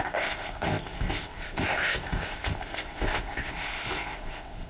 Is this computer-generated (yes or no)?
yes